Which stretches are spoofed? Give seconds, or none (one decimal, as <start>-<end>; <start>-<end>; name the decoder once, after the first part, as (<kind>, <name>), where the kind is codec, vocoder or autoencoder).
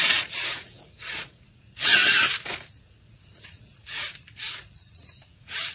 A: 0.0-2.0 (vocoder, Vocos); 2.8-5.7